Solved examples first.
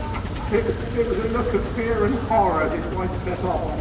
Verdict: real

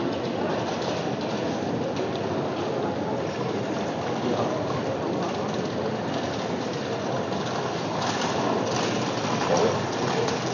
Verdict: real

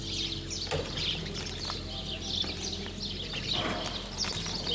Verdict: real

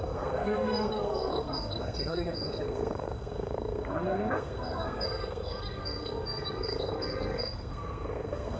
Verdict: fake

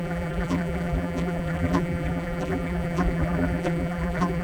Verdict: fake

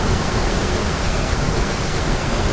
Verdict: fake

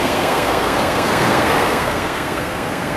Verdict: fake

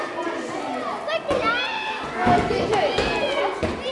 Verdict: real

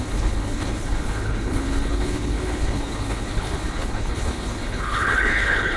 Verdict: fake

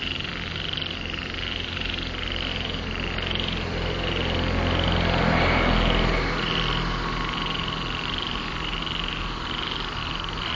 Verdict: real